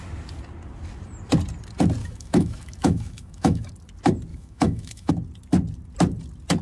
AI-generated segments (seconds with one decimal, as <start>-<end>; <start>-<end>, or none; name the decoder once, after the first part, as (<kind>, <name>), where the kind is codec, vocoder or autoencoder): 2.0-3.7 (autoencoder, DAC-VAE); 4.3-5.1